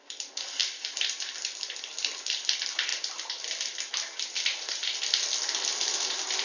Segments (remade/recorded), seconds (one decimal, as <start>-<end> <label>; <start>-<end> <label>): 0.0-0.6 recorded; 0.6-1.3 remade; 1.3-2.9 recorded; 2.9-5.0 remade; 5.0-6.4 recorded